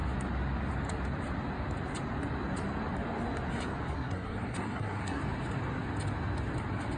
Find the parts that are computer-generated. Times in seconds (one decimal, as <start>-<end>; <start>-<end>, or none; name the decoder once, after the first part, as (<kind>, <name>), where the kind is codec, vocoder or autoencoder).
3.9-5.2 (codec, SNAC)